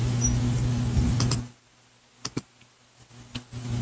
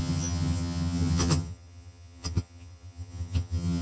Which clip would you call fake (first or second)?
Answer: second